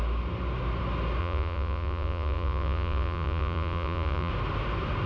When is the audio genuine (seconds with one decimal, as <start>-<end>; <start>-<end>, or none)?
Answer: 0.0-1.2; 4.3-5.1

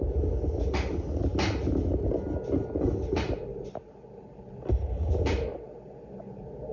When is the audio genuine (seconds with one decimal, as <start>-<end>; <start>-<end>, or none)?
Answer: 0.0-6.7